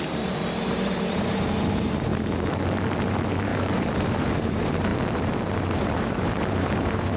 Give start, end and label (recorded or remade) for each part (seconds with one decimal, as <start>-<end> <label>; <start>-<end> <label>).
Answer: 0.0-2.1 remade; 2.1-3.0 recorded; 3.0-4.9 remade; 4.9-5.6 recorded; 5.6-7.2 remade